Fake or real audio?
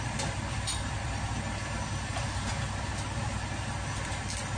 real